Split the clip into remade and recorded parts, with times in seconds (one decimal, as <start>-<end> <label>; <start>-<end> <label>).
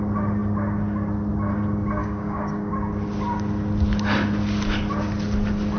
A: 0.0-2.0 recorded; 2.0-2.7 remade; 2.7-5.8 recorded